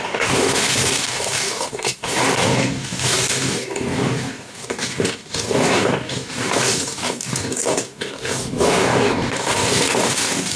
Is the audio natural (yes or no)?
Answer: no